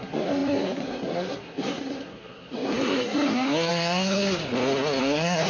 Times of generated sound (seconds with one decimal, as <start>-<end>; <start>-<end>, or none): 0.0-4.4; 5.0-5.5